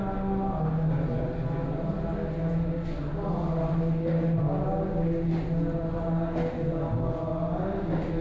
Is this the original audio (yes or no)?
yes